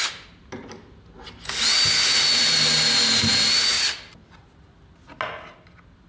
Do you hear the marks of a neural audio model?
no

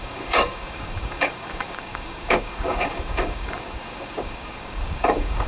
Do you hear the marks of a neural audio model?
yes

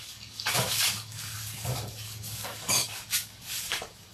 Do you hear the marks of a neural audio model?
yes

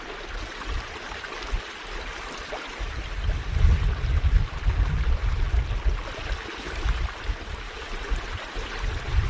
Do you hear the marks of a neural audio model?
no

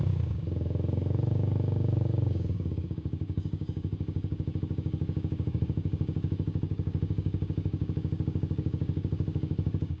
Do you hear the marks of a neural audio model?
yes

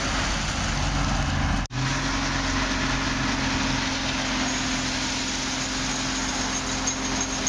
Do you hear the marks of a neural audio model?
no